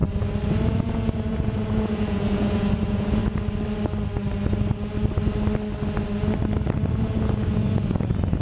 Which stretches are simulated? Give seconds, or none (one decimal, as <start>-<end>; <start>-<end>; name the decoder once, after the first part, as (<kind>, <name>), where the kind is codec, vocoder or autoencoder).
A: 0.5-3.2 (vocoder, Vocos); 6.9-8.4